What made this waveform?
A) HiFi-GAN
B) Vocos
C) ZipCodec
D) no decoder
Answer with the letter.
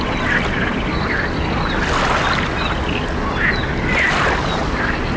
D